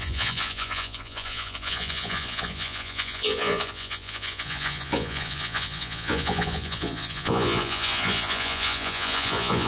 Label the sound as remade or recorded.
remade